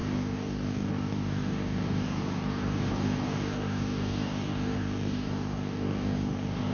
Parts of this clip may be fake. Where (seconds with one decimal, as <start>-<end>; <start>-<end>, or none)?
0.0-6.7